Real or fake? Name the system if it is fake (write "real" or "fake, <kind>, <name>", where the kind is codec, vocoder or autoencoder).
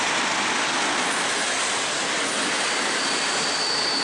real